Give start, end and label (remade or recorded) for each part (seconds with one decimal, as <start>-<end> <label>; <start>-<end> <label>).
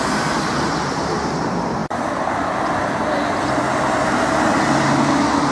0.0-5.5 recorded